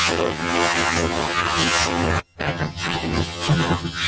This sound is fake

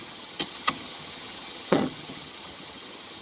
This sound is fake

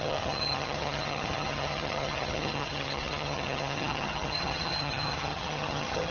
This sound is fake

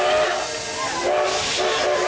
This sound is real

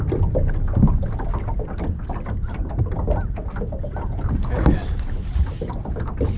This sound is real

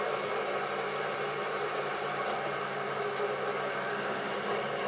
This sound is real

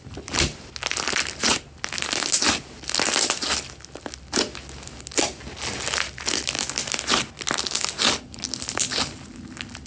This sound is real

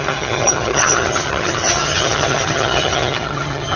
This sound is fake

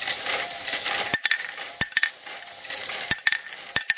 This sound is real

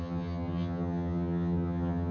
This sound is fake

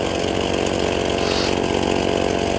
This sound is real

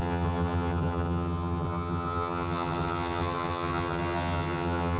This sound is fake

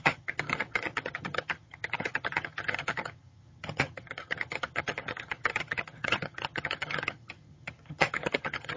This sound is fake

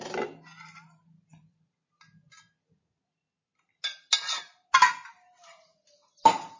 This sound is real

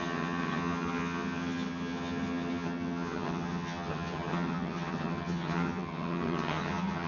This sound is fake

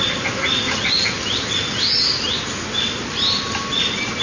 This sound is real